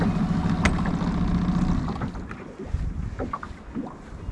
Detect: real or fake real